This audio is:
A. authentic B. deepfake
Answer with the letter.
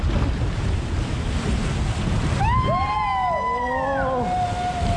A